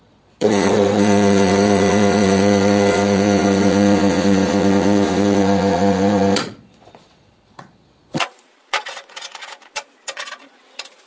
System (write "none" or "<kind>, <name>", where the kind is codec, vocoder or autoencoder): vocoder, Vocos